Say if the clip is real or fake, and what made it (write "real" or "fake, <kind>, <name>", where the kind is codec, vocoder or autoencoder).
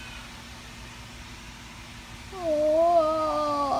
real